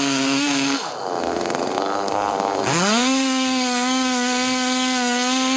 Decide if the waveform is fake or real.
fake